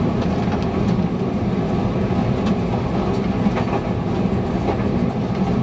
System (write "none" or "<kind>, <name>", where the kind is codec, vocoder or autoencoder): none